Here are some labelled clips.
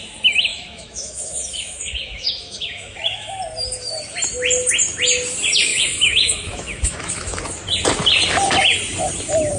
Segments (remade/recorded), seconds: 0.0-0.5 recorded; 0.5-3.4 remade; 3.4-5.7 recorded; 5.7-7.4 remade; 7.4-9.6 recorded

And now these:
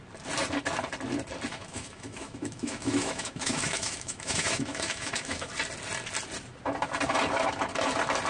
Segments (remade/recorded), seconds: 0.0-1.5 recorded; 1.5-5.5 remade; 5.5-8.3 recorded

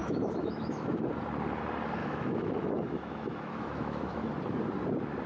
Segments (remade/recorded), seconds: 0.0-1.0 remade; 1.0-2.0 recorded; 2.0-4.3 remade; 4.3-5.3 recorded

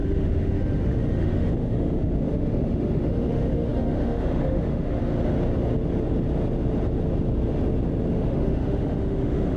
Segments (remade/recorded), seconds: 0.0-5.0 remade; 5.0-8.1 recorded; 8.1-9.6 remade

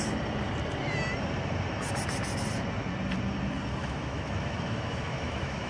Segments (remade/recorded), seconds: 0.0-3.8 recorded; 3.8-5.7 remade

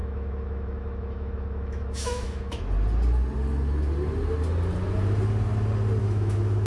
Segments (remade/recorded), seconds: 0.0-2.7 remade; 2.7-6.0 recorded; 6.0-6.7 remade

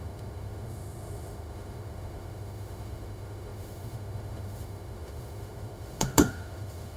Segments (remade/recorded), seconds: 0.0-7.0 remade

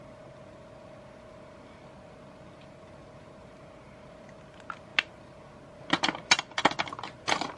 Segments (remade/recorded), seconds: 0.0-7.6 recorded